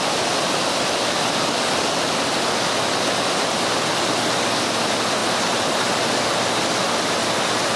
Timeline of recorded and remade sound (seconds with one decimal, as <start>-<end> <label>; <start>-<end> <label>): 0.0-5.2 recorded; 5.2-6.2 remade; 6.2-7.8 recorded